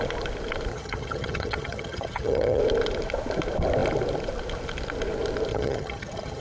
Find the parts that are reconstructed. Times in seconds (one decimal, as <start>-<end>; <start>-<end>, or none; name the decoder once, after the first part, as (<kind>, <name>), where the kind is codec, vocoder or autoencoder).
0.7-2.6 (vocoder, HiFi-GAN); 5.5-6.4